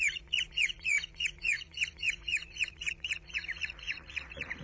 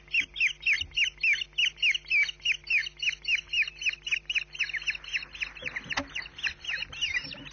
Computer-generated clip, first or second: first